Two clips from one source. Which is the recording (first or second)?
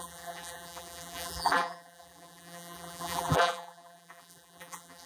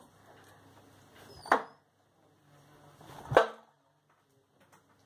second